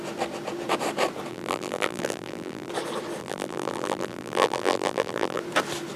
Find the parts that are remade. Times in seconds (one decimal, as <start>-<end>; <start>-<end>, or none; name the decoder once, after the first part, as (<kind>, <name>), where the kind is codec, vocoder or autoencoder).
1.3-2.7 (vocoder, BigVGAN v2); 3.2-5.4